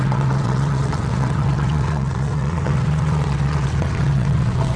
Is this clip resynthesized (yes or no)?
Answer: yes